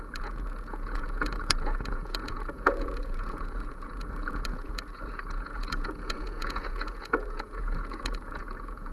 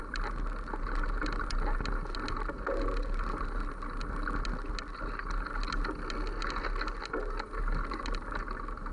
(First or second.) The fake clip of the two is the first